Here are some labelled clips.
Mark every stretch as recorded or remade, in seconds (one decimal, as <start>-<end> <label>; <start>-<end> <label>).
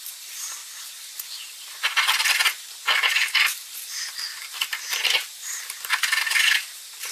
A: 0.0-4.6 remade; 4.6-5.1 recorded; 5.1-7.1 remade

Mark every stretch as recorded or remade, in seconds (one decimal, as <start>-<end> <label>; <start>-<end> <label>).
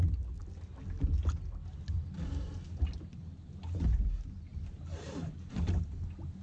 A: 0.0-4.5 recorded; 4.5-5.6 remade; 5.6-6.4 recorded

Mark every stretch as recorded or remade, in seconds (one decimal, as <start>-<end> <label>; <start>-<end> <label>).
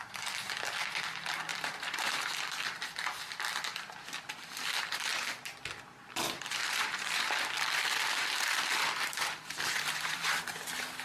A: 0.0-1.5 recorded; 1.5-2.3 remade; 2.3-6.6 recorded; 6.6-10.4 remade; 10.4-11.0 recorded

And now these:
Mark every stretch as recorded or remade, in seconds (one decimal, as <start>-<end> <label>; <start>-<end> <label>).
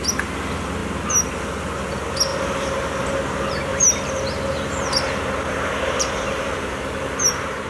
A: 0.0-2.3 recorded; 2.3-3.1 remade; 3.1-3.7 recorded; 3.7-7.7 remade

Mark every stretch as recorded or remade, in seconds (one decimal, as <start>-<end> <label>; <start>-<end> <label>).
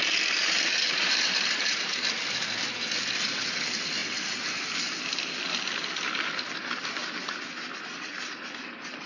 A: 0.0-0.4 recorded; 0.4-2.1 remade; 2.1-9.1 recorded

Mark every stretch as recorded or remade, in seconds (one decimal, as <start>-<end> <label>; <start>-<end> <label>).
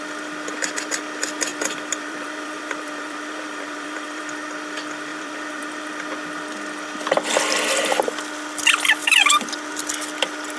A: 0.0-1.5 recorded; 1.5-4.2 remade; 4.2-5.1 recorded; 5.1-5.9 remade; 5.9-9.0 recorded; 9.0-9.5 remade; 9.5-10.6 recorded